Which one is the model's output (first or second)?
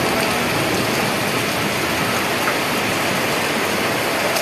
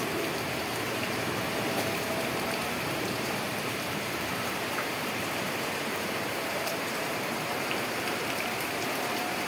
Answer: second